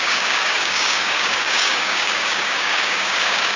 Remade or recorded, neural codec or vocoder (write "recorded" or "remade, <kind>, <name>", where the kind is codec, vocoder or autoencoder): remade, codec, DAC